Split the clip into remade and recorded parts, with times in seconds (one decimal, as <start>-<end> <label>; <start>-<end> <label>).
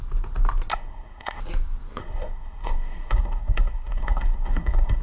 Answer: 0.0-0.7 recorded; 0.7-1.4 remade; 1.4-2.0 recorded; 2.0-5.0 remade